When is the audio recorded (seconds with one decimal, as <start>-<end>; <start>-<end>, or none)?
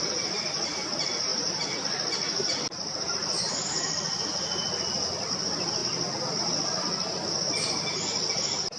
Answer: 0.0-8.8